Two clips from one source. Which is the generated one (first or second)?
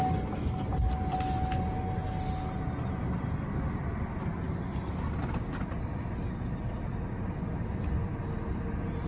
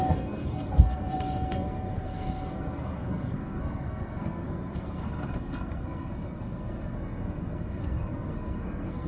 second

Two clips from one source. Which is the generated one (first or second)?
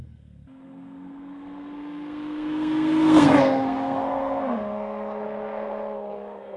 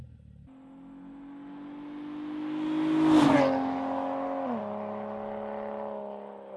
first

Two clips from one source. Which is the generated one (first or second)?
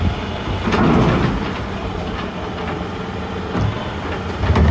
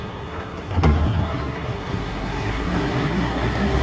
second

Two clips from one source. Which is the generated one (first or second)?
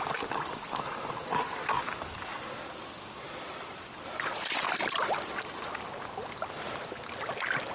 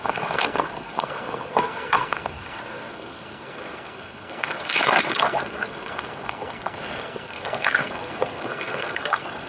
second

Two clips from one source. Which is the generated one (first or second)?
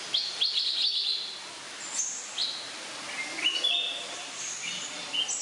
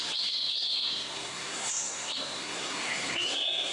second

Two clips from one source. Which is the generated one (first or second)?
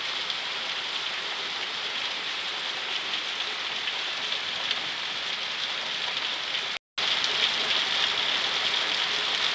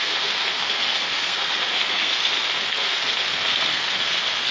second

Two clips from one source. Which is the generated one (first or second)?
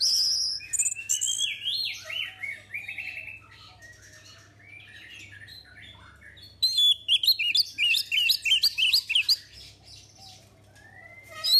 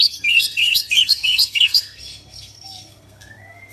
second